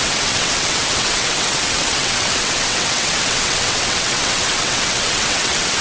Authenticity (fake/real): fake